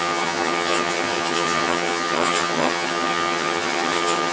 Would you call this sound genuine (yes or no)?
no